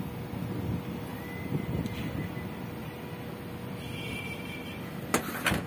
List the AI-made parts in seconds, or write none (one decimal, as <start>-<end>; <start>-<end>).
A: none